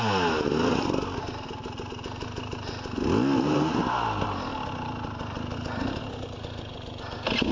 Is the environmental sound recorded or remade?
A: recorded